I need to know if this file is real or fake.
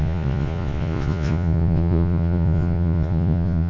fake